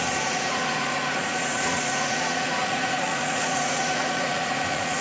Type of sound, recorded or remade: remade